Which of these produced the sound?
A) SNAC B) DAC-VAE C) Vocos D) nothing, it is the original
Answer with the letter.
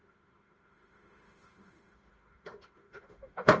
B